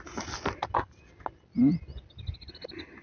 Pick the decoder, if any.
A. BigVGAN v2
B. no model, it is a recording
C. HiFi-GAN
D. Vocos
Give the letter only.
B